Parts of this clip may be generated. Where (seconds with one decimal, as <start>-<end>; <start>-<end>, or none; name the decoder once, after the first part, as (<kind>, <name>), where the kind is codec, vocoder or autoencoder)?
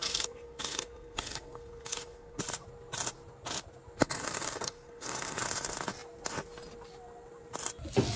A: 0.0-2.4 (codec, SNAC); 4.0-5.4